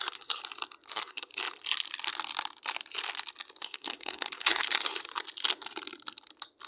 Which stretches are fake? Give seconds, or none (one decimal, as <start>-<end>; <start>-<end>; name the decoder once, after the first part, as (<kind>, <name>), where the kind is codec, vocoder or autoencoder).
0.0-0.4 (codec, SNAC); 0.9-1.3; 3.6-5.0